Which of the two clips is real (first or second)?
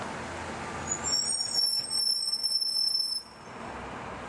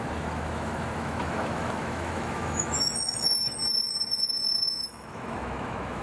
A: first